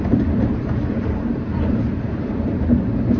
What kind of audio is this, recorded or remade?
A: remade